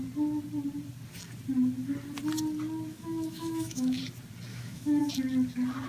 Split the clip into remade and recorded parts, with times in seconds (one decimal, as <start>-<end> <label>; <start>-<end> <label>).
0.0-2.9 recorded; 2.9-4.0 remade; 4.0-4.5 recorded; 4.5-5.0 remade; 5.0-5.9 recorded